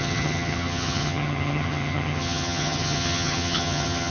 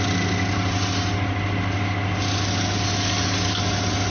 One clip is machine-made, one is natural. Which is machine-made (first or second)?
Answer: first